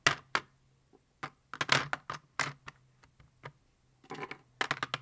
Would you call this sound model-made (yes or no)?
no